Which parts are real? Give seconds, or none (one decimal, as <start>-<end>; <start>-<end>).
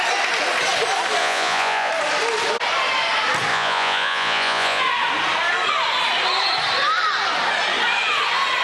0.0-1.2; 1.9-3.5; 4.8-8.6